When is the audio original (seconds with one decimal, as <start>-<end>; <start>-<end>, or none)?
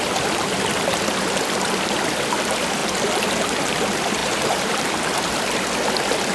0.0-4.2; 4.9-6.3